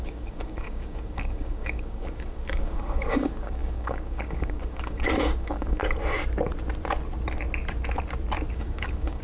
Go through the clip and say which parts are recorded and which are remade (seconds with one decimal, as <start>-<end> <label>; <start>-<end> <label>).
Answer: 0.0-5.8 remade; 5.8-8.5 recorded; 8.5-9.2 remade